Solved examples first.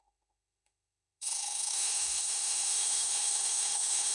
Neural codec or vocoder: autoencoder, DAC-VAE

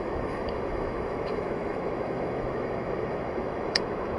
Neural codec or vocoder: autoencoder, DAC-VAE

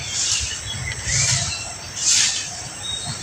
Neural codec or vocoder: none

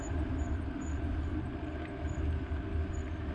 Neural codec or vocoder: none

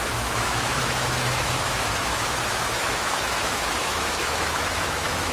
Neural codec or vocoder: autoencoder, DAC-VAE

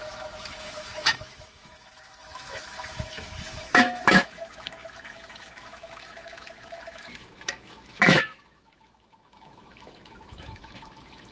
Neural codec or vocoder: autoencoder, DAC-VAE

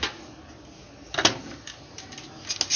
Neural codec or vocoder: none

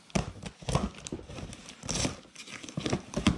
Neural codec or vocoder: none